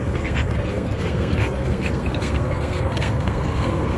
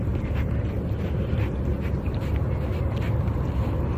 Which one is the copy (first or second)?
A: first